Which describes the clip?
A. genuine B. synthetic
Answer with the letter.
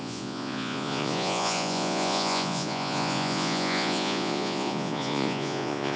B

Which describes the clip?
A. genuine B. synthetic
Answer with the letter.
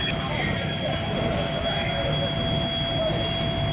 A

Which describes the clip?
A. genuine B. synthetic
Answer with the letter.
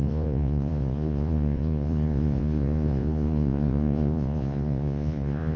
B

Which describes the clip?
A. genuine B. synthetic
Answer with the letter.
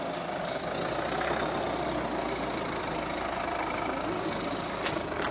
A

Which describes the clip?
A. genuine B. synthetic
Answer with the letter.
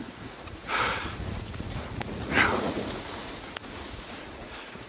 B